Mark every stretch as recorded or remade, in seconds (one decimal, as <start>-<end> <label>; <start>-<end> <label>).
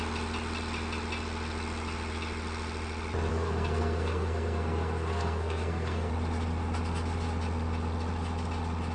0.0-3.3 recorded; 3.3-6.1 remade; 6.1-8.9 recorded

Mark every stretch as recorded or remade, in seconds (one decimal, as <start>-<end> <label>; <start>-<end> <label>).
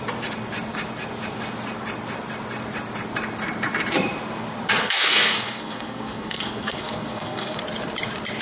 0.0-4.8 recorded; 4.8-7.6 remade; 7.6-8.4 recorded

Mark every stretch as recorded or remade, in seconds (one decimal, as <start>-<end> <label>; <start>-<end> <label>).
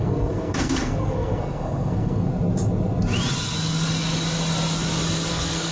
0.0-2.3 remade; 2.3-5.3 recorded; 5.3-5.7 remade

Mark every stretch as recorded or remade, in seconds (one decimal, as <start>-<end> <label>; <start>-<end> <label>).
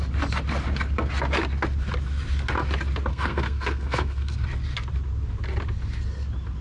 0.0-3.1 recorded; 3.1-4.3 remade; 4.3-6.6 recorded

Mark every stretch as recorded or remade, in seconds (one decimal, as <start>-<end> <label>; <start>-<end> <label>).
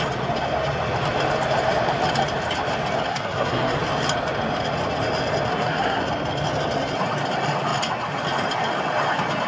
0.0-3.1 recorded; 3.1-3.8 remade; 3.8-5.5 recorded; 5.5-6.0 remade; 6.0-9.5 recorded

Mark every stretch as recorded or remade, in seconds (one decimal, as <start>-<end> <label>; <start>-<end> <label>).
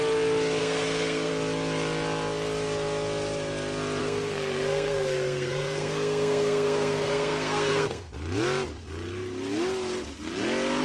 0.0-0.6 recorded; 0.6-1.3 remade; 1.3-4.0 recorded; 4.0-8.1 remade; 8.1-10.8 recorded